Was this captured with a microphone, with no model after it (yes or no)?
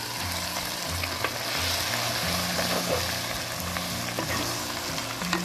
yes